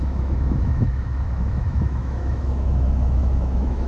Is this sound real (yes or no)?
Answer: no